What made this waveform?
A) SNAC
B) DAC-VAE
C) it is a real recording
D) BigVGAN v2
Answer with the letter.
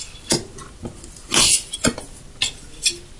C